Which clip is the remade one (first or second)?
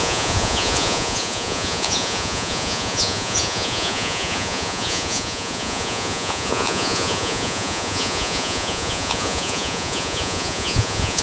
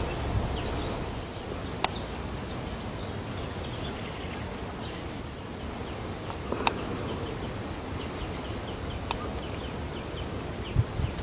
first